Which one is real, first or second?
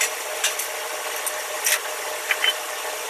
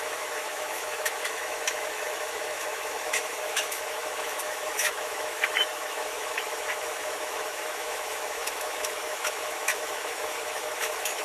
first